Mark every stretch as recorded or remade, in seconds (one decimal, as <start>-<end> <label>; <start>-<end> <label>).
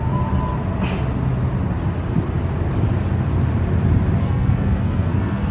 0.0-4.2 recorded; 4.2-5.5 remade